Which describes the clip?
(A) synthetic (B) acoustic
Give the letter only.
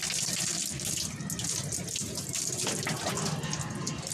B